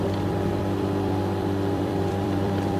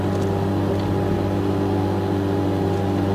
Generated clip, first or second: first